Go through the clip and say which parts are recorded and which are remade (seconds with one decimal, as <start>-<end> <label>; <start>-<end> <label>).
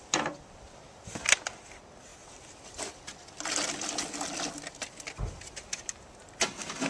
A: 0.0-2.1 recorded; 2.1-2.6 remade; 2.6-6.9 recorded